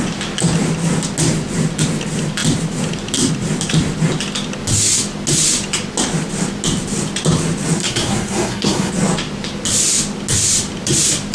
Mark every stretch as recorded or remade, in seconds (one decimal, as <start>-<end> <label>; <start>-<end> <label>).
0.0-7.8 recorded; 7.8-8.9 remade; 8.9-11.3 recorded